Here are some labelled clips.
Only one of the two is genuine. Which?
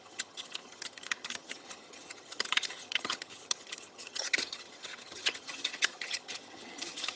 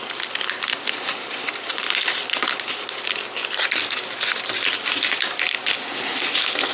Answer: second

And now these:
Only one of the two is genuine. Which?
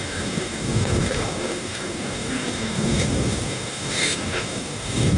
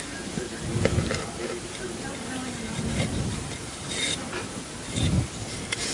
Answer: second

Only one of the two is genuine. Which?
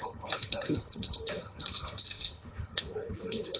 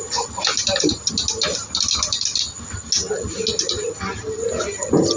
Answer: second